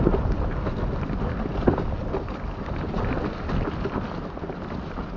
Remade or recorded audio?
recorded